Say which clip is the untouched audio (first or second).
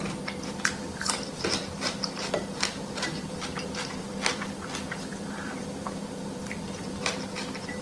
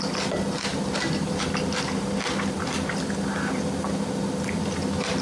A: second